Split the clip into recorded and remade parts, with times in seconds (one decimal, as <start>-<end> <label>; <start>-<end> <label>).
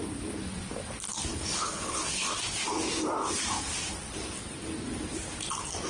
0.0-1.3 recorded; 1.3-2.3 remade; 2.3-5.9 recorded